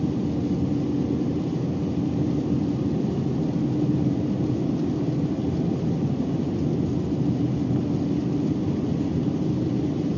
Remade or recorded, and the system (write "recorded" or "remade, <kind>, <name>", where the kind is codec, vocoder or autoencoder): recorded